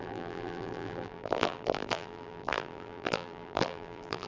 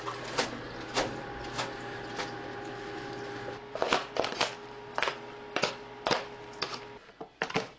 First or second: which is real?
second